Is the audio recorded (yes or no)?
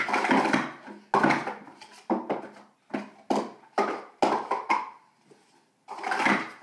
yes